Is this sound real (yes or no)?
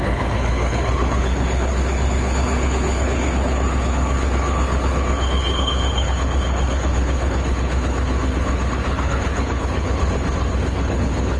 no